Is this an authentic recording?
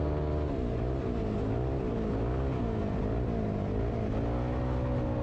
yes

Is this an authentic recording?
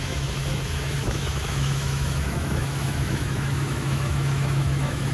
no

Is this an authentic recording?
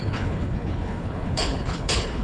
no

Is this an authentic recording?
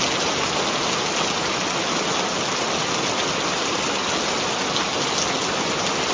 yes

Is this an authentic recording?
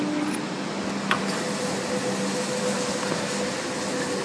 yes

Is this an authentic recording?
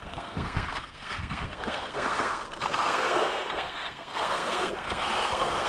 no